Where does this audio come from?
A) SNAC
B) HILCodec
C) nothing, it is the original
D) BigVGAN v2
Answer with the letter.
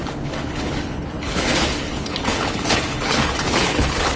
B